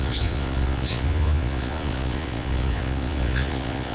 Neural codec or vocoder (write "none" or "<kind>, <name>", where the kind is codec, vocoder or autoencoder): vocoder, Vocos